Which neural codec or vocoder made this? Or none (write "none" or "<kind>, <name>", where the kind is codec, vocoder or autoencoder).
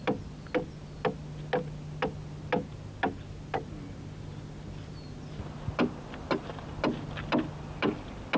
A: none